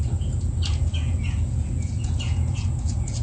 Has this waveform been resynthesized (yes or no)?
yes